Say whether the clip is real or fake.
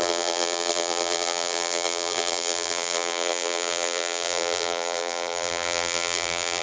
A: fake